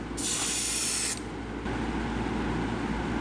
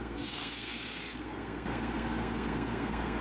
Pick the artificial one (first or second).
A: second